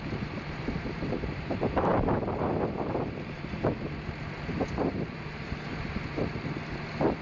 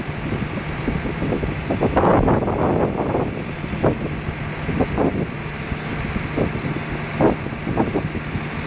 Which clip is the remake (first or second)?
first